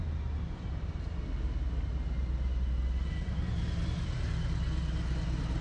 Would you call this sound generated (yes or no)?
no